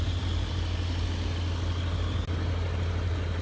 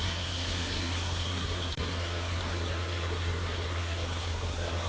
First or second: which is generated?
second